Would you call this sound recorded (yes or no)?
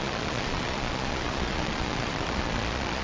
no